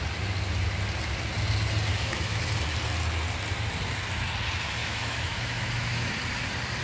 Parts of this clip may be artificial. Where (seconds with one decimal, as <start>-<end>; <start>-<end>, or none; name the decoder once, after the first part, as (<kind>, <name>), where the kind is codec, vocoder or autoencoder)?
1.9-2.4 (autoencoder, DAC-VAE); 4.8-6.1